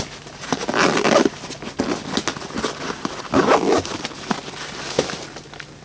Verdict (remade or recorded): recorded